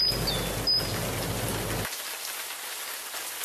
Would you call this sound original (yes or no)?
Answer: yes